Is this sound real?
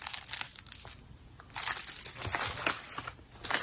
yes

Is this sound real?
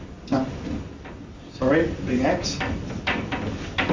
yes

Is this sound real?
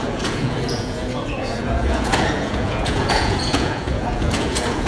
no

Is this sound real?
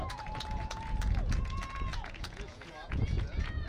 no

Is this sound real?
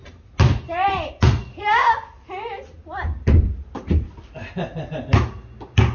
yes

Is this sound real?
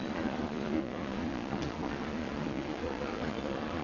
no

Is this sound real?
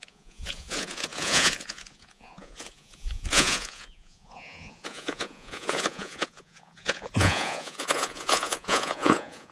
no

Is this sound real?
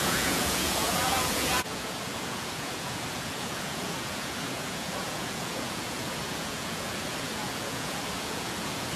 no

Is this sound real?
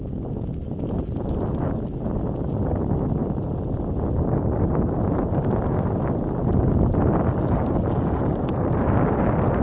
yes